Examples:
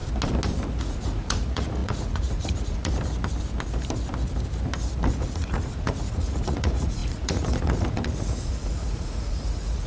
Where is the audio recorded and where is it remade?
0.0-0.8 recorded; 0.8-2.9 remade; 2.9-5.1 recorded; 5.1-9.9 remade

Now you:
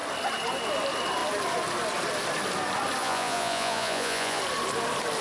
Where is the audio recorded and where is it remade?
0.0-3.0 recorded; 3.0-4.4 remade; 4.4-5.2 recorded

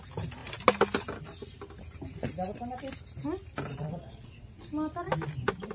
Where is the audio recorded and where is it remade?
0.0-3.7 recorded; 3.7-4.7 remade; 4.7-5.7 recorded

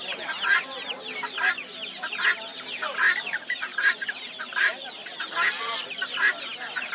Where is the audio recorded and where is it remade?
0.0-6.9 recorded